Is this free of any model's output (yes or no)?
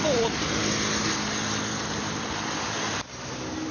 yes